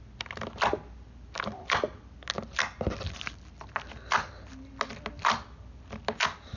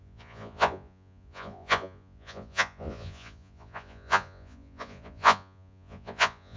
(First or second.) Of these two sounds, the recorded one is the first